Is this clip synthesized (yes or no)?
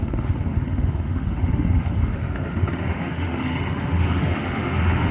yes